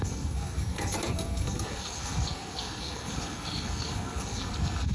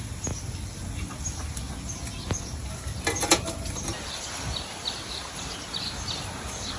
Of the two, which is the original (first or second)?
second